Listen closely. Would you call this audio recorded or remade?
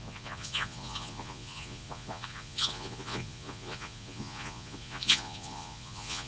remade